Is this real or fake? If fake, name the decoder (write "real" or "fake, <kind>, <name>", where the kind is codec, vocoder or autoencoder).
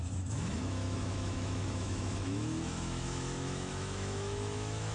fake, autoencoder, DAC-VAE